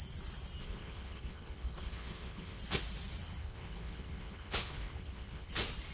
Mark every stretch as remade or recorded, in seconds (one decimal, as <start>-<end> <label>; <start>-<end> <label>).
0.0-0.6 recorded; 0.6-2.6 remade; 2.6-3.4 recorded; 3.4-5.5 remade; 5.5-5.9 recorded